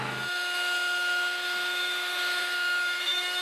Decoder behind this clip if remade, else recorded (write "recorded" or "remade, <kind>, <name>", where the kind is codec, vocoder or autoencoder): remade, autoencoder, DAC-VAE